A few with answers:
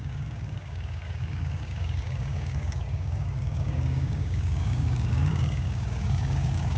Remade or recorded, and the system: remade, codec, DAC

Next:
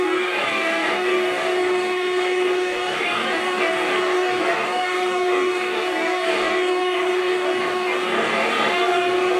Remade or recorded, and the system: remade, codec, DAC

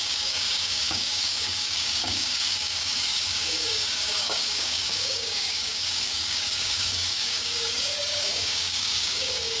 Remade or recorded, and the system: remade, codec, DAC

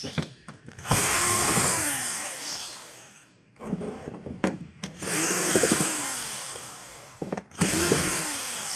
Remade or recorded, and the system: remade, codec, DAC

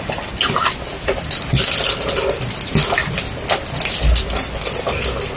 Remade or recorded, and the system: recorded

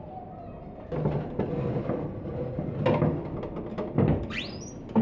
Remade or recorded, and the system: recorded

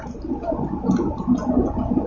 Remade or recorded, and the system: recorded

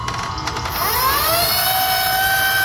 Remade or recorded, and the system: recorded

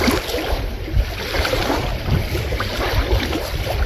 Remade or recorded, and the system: recorded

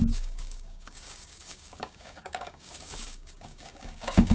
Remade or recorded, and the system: remade, codec, DAC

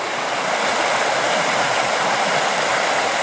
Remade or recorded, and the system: recorded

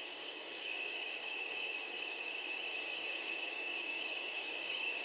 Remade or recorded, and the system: remade, codec, DAC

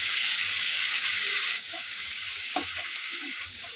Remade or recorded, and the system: remade, codec, DAC